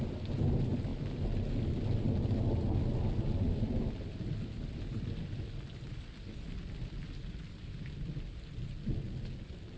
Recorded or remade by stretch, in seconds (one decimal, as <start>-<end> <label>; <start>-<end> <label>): 0.0-9.8 recorded